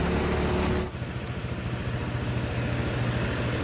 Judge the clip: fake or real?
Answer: real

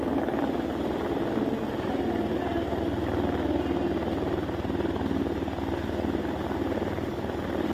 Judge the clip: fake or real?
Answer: real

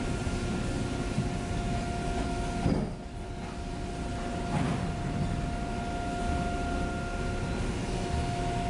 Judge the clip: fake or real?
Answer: real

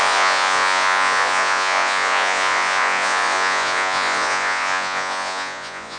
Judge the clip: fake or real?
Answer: fake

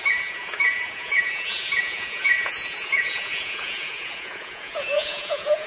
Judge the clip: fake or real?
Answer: fake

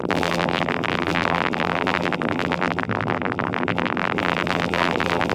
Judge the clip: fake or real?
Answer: fake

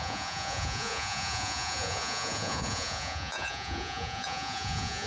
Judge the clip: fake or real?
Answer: fake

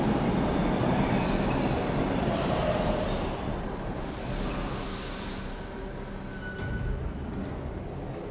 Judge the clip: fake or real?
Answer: real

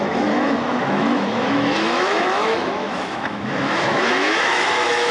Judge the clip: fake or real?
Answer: fake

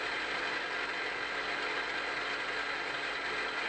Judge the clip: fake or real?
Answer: real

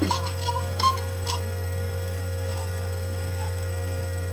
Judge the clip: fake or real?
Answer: fake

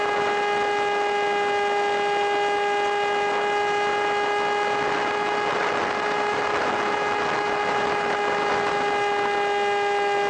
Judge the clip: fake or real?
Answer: real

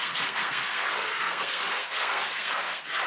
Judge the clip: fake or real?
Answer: fake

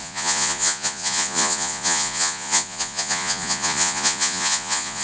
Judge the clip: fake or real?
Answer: fake